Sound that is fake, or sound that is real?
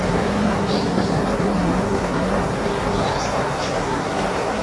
fake